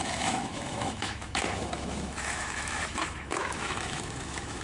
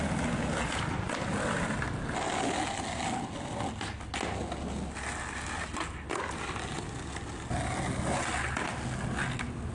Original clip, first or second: second